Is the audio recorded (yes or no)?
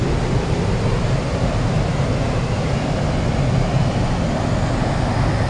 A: yes